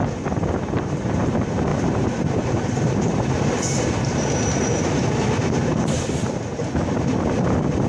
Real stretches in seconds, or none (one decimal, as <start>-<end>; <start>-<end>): 0.0-1.7; 6.4-7.9